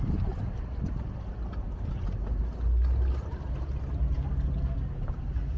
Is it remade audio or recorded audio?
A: recorded